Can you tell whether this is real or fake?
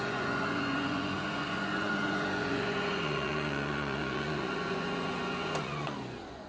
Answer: fake